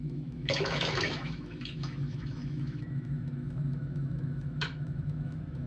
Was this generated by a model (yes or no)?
yes